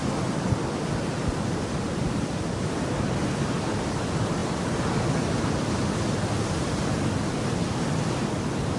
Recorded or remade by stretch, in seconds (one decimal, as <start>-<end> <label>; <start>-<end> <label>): 0.0-8.8 recorded